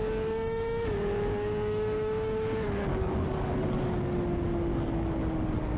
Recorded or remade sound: remade